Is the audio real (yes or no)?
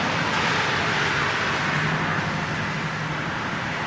yes